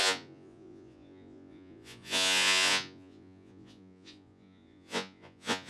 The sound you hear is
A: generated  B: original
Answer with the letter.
A